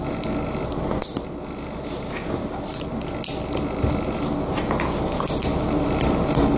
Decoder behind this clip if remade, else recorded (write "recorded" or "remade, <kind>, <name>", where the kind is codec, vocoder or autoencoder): recorded